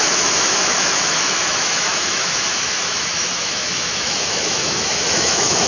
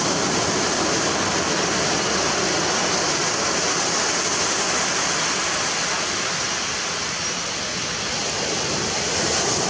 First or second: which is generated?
first